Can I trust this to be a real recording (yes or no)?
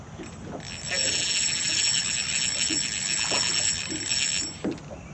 yes